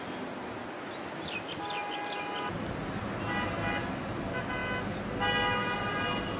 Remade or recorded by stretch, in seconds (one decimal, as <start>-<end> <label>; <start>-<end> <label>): 0.0-6.4 recorded